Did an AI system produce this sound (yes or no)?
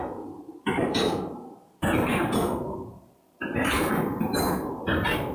yes